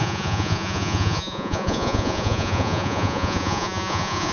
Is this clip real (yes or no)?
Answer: no